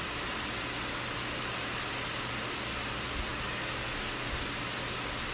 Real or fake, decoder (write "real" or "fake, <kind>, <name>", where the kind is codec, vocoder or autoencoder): real